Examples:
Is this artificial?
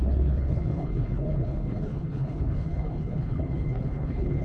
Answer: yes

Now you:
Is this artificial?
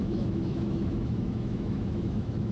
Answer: yes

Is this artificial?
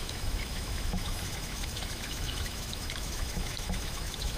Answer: yes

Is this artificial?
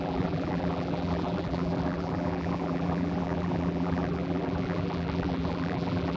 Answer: yes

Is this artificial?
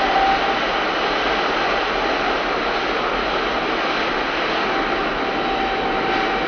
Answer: no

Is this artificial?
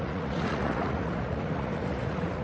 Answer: yes